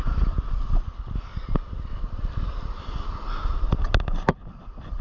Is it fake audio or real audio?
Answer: real